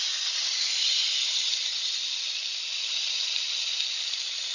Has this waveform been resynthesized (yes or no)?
no